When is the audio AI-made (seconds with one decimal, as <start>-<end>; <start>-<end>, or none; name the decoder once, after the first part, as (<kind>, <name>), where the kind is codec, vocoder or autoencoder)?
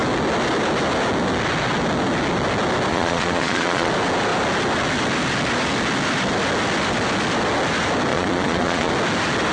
2.9-3.9 (vocoder, Vocos); 8.1-8.9